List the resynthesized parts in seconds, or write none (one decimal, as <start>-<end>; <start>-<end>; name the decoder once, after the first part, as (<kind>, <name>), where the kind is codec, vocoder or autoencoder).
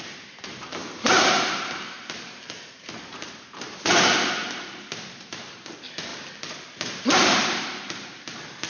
0.0-6.1 (vocoder, BigVGAN v2); 7.0-8.7